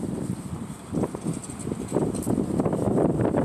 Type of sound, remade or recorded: recorded